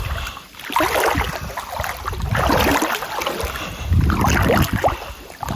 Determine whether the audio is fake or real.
real